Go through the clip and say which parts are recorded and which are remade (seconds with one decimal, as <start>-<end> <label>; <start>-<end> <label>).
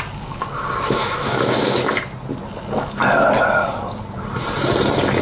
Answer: 0.0-1.0 recorded; 1.0-1.9 remade; 1.9-5.2 recorded